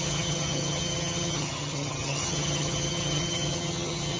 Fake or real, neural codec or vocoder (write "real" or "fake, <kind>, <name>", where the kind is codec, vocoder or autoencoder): fake, vocoder, HiFi-GAN